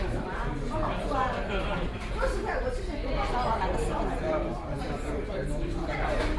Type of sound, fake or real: fake